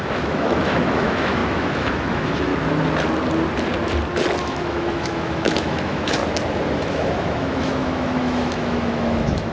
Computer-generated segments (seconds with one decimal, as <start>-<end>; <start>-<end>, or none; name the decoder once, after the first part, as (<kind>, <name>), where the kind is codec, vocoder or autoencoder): 0.0-2.5 (autoencoder, DAC-VAE); 4.4-6.2; 6.9-9.5